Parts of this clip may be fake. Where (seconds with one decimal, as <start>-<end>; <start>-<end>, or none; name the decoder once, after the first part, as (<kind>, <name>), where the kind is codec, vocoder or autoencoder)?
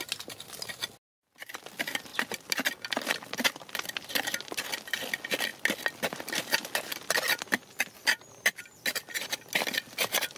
none